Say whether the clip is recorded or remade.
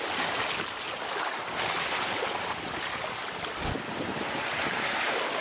recorded